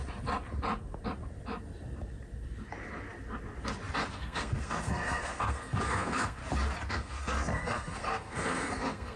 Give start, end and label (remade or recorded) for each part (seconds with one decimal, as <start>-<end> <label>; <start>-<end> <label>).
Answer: 0.0-4.1 recorded; 4.1-6.4 remade; 6.4-6.9 recorded; 6.9-9.2 remade